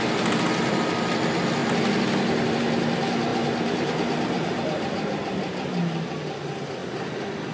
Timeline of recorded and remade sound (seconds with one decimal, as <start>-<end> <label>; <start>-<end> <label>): 0.0-3.3 recorded; 3.3-6.1 remade; 6.1-7.5 recorded